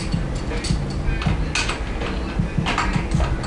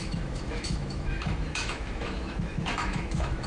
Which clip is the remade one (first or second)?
second